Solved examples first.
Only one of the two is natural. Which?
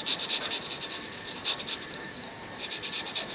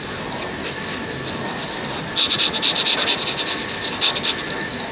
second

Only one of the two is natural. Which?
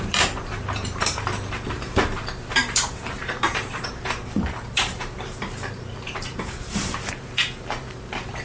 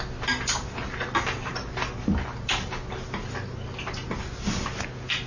second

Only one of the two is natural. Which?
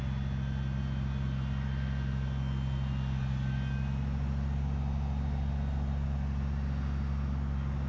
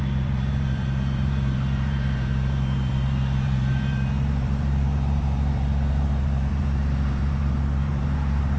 first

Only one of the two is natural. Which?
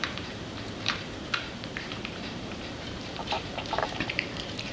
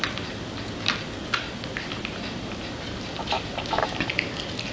second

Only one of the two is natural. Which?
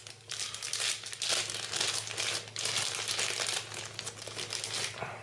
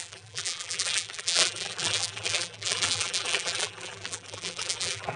first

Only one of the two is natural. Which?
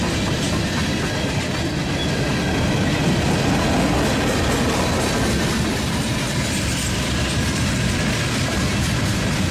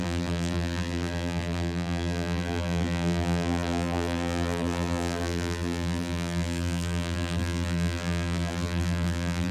first